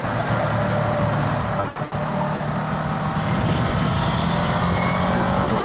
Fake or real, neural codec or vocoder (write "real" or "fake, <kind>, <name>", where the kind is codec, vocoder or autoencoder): real